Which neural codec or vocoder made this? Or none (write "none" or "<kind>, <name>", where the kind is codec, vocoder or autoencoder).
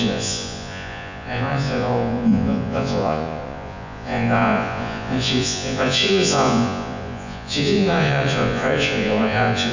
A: vocoder, Vocos